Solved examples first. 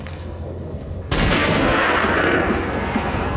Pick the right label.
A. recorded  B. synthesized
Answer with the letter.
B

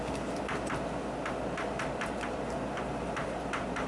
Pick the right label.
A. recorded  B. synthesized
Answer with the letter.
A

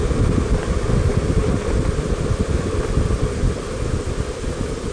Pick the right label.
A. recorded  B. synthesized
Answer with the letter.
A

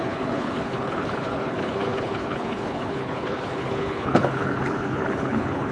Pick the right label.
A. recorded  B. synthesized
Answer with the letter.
B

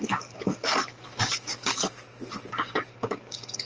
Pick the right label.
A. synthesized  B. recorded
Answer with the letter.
A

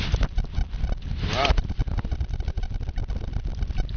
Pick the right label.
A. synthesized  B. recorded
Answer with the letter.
B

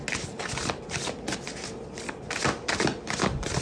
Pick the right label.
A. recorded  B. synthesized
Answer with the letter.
A